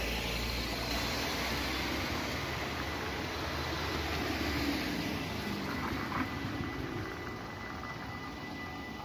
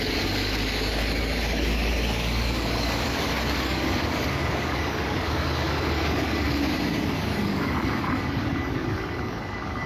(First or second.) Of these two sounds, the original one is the first